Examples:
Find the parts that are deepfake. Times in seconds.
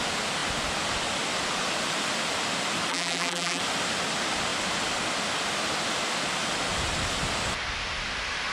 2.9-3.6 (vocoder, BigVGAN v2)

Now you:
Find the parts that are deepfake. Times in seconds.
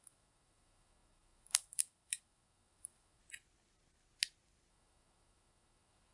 0.0-3.2 (autoencoder, DAC-VAE); 4.7-6.1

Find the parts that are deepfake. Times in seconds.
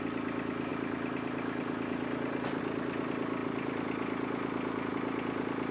none